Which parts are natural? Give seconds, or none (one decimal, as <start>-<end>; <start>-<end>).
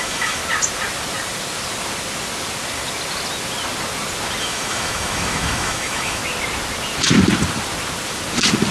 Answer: 0.4-4.4; 6.2-8.7